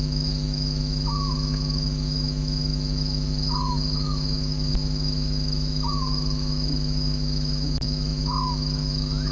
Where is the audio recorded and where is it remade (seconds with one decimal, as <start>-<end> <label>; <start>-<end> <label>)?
0.0-9.3 remade